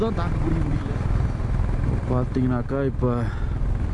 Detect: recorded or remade recorded